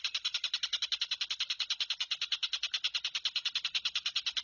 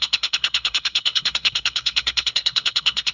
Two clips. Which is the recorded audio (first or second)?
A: first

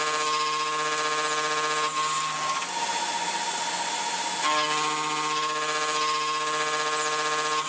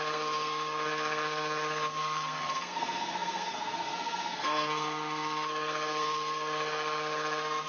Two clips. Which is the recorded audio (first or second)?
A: first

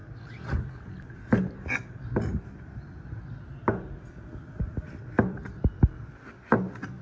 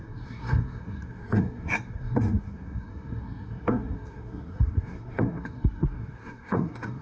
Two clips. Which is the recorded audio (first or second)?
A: first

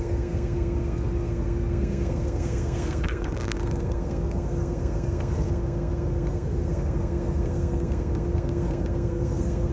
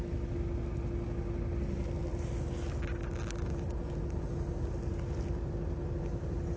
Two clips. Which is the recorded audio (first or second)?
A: second